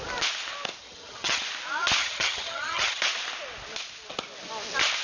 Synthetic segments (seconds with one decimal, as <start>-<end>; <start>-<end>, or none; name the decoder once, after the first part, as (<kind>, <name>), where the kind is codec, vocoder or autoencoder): 0.8-1.4 (vocoder, HiFi-GAN); 2.0-3.0